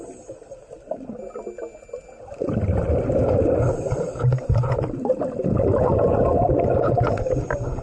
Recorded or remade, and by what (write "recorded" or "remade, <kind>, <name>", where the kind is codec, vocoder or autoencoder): recorded